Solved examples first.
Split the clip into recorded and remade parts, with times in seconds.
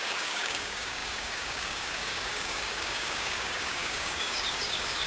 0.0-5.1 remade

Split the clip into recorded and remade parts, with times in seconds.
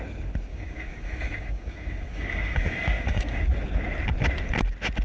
0.0-0.5 recorded; 0.5-3.4 remade; 3.4-5.0 recorded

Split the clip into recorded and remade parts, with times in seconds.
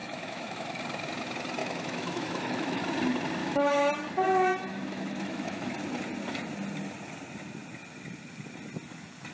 0.0-0.8 remade; 0.8-1.6 recorded; 1.6-2.8 remade; 2.8-3.4 recorded; 3.4-3.9 remade; 3.9-4.7 recorded; 4.7-5.7 remade; 5.7-9.3 recorded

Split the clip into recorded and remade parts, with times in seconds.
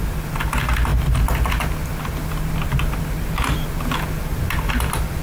0.0-5.2 recorded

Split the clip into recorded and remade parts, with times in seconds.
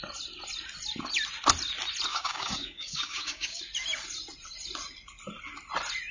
0.0-2.1 recorded; 2.1-3.6 remade; 3.6-6.1 recorded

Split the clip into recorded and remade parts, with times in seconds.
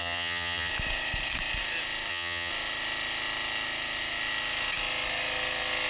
0.0-0.7 remade; 0.7-2.1 recorded; 2.1-2.5 remade; 2.5-5.9 recorded